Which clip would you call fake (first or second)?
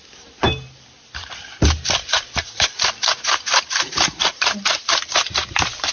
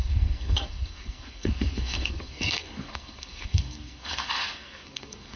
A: second